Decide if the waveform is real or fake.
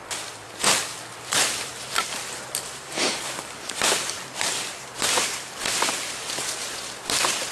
fake